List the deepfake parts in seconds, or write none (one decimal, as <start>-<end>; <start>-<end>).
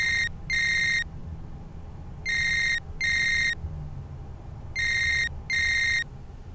none